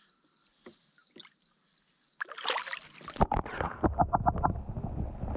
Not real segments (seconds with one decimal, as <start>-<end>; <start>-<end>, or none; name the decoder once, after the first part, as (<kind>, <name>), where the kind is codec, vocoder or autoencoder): none